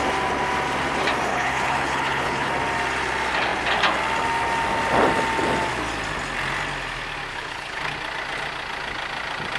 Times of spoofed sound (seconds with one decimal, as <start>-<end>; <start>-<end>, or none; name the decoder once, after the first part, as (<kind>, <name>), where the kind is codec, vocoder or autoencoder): 1.3-2.5 (codec, HILCodec); 7.3-7.8